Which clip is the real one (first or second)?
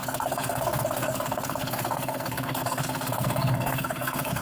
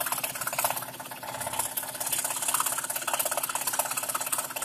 second